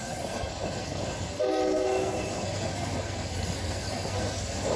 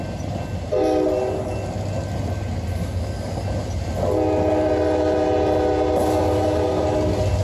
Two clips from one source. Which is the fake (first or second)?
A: first